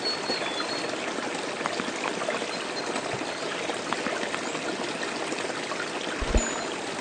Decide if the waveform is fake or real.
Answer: real